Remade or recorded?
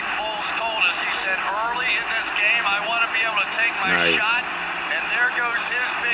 recorded